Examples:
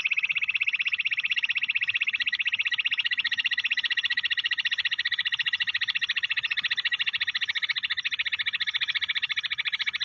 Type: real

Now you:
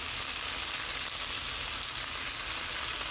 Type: real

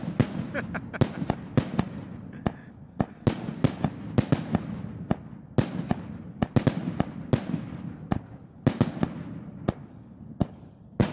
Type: real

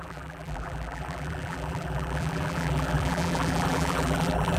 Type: fake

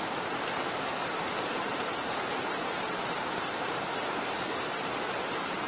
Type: fake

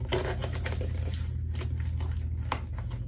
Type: real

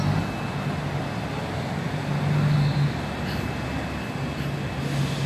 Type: real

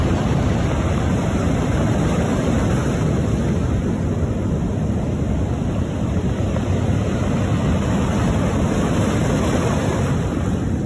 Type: real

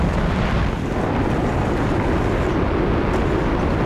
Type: real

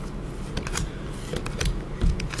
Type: real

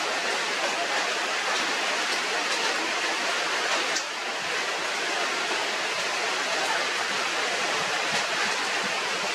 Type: real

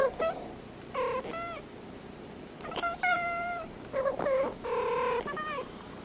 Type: fake